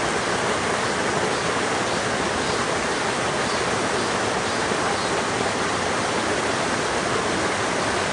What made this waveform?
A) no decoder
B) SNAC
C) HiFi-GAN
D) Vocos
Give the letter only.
A